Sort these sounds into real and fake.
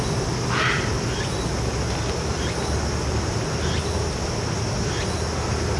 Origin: real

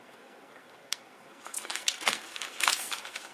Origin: fake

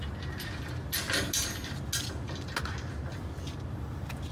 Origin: real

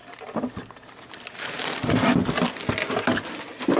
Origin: real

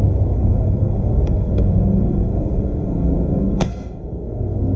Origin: fake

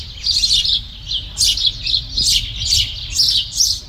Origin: real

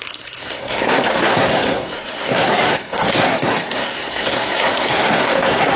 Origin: fake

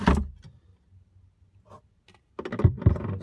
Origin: real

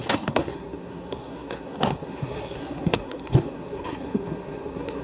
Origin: fake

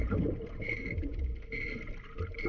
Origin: real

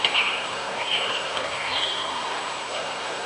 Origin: fake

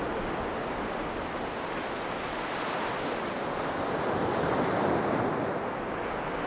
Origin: real